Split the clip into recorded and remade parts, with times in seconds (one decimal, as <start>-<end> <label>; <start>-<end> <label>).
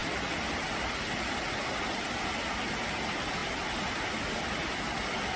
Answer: 0.0-5.4 recorded